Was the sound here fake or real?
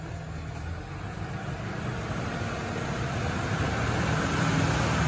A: real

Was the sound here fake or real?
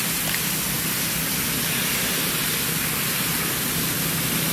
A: real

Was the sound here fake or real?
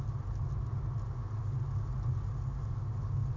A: real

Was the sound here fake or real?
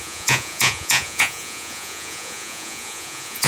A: fake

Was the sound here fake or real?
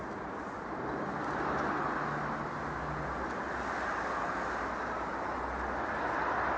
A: real